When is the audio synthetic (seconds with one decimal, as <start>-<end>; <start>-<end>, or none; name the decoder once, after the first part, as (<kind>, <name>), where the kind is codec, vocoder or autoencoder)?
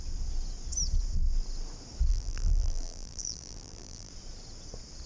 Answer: 2.1-4.1 (vocoder, BigVGAN v2)